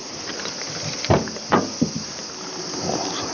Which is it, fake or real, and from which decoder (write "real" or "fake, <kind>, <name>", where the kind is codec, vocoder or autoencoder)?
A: real